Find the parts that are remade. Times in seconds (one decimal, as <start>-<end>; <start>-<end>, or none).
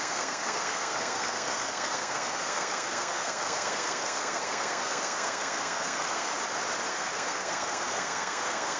0.0-6.3; 6.9-8.8